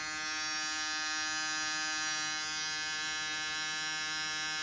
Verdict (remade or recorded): recorded